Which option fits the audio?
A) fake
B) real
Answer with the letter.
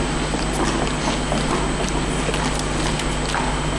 B